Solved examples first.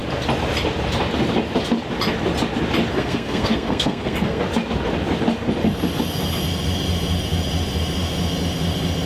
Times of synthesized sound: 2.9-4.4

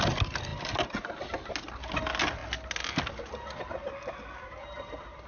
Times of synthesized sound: none